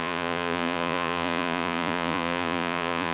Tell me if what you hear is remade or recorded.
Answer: remade